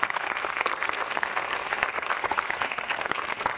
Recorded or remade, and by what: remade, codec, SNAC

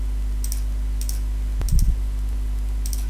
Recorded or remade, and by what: recorded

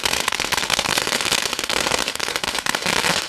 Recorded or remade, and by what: remade, codec, SNAC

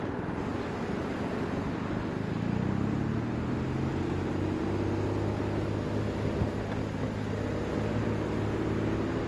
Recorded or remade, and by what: recorded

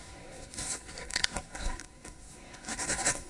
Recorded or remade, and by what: remade, codec, SNAC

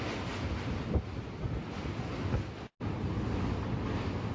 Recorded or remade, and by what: recorded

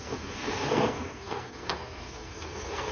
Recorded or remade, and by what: remade, codec, SNAC